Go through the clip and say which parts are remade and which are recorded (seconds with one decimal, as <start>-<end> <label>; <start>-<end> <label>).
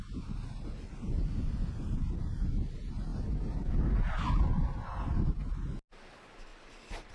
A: 0.0-7.1 recorded